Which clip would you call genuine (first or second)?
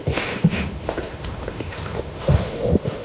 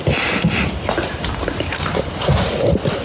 second